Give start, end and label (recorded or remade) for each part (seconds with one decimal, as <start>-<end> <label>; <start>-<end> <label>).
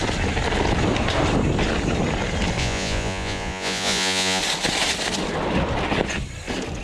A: 0.0-2.6 recorded; 2.6-4.4 remade; 4.4-6.8 recorded